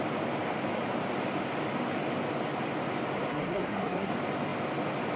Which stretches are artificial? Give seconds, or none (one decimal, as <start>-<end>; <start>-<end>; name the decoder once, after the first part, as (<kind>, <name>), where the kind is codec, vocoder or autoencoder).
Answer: 3.3-4.1 (codec, SNAC)